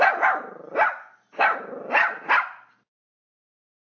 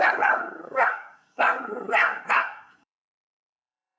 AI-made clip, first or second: second